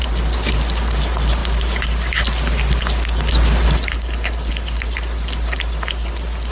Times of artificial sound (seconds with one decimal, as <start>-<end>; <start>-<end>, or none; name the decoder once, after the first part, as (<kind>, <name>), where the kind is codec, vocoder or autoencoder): none

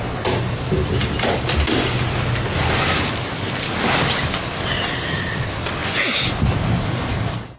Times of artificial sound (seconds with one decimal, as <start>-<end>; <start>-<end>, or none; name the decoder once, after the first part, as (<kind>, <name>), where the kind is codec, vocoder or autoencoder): 5.8-6.4 (vocoder, Vocos)

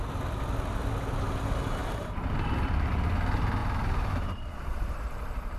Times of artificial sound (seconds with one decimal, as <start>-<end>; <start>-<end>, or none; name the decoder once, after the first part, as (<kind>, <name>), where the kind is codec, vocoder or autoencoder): 1.8-3.0 (vocoder, BigVGAN v2); 3.6-5.6

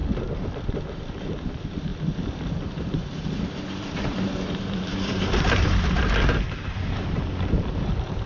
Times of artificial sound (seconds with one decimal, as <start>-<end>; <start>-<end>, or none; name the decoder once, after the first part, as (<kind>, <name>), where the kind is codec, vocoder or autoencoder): 0.7-8.3 (vocoder, BigVGAN v2)

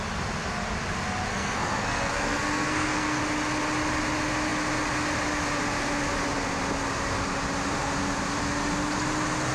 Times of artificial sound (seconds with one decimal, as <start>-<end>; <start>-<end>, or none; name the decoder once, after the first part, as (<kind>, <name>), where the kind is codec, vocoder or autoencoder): 1.3-3.2 (codec, SNAC)

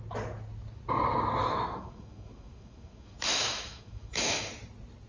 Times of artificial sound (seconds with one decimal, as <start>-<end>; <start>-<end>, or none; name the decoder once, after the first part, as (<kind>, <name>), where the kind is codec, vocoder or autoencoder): 1.4-4.5 (autoencoder, DAC-VAE)

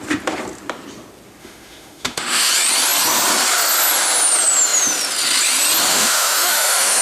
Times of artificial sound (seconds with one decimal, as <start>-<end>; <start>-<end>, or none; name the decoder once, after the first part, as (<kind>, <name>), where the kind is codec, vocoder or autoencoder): 1.4-2.5 (autoencoder, DAC-VAE); 5.9-7.0

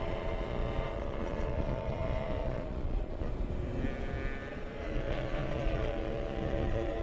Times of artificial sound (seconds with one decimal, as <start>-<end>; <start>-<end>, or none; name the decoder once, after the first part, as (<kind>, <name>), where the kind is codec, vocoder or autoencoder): 0.0-3.3 (vocoder, Vocos); 4.5-7.0